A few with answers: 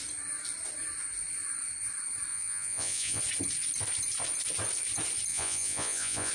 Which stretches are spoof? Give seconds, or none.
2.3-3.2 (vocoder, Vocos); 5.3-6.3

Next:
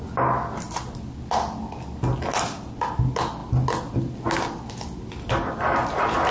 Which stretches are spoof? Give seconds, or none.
none

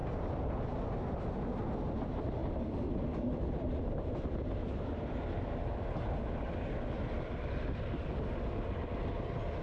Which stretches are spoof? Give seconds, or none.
2.4-5.4 (vocoder, BigVGAN v2)

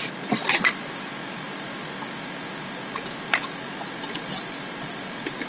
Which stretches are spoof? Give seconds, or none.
none

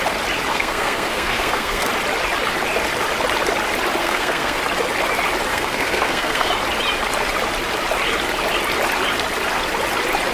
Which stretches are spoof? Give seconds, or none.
0.5-1.9 (codec, SNAC); 4.0-4.6; 5.5-6.5

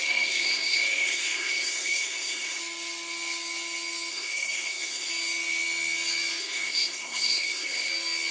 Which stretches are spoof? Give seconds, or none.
0.0-2.6 (codec, SNAC); 4.1-5.1; 6.4-7.9

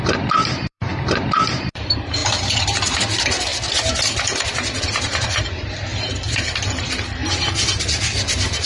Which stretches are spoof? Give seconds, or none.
0.0-3.5 (vocoder, BigVGAN v2); 4.8-8.7

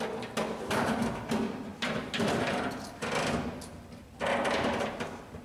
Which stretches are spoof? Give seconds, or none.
none